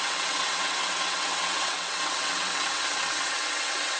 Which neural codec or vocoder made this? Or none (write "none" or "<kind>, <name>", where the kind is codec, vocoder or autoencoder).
vocoder, WaveNeXt